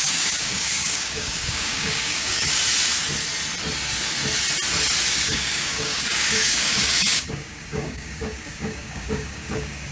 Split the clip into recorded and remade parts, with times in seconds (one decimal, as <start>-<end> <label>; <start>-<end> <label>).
0.0-2.6 remade; 2.6-5.0 recorded; 5.0-9.9 remade